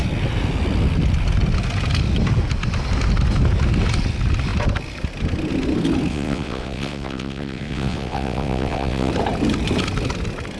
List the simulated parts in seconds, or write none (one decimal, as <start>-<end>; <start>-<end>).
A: 6.1-9.1